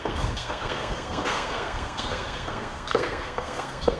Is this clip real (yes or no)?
no